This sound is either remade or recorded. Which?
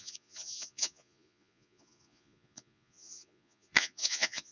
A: remade